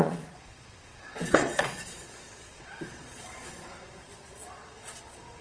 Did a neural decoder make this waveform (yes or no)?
yes